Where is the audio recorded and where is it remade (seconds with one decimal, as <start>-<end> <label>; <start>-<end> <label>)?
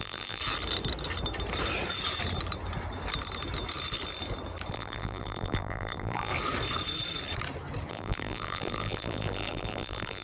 0.0-0.4 remade; 0.4-4.7 recorded; 4.7-6.3 remade; 6.3-7.9 recorded; 7.9-10.2 remade